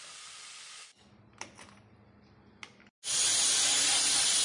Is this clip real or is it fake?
real